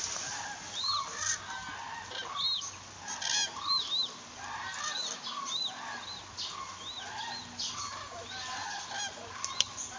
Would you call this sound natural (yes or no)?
yes